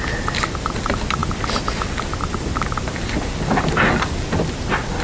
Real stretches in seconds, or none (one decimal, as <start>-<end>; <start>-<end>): 0.0-5.0